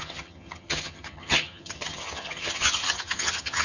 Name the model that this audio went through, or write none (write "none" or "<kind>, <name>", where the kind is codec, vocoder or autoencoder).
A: vocoder, HiFi-GAN